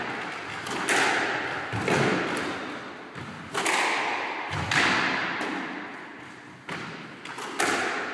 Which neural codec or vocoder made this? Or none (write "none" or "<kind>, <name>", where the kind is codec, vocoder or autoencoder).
none